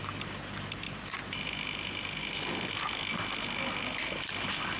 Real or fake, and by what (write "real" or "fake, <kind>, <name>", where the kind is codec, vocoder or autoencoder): real